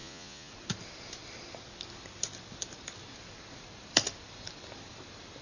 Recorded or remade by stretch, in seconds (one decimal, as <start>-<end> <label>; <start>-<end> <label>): 0.0-0.5 remade; 0.5-5.4 recorded